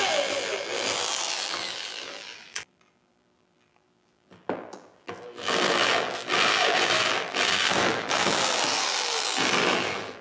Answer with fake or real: fake